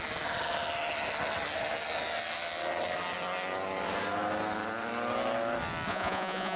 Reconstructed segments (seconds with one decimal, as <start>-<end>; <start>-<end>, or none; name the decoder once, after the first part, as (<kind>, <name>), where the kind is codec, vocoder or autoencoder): 5.9-6.6 (vocoder, Vocos)